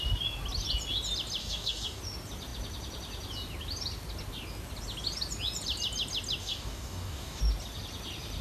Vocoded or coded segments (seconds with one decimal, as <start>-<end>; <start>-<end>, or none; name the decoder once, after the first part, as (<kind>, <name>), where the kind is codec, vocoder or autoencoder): 1.4-2.0 (codec, DAC); 6.4-7.4